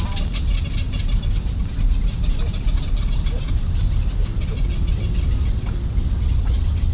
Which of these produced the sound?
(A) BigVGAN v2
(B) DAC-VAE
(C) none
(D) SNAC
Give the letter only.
C